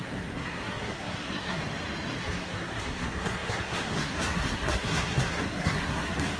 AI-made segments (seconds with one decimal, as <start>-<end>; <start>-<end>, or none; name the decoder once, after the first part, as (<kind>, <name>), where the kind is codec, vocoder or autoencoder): 0.0-1.6 (codec, SNAC); 2.2-6.4